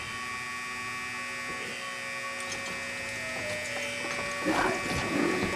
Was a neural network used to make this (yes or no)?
no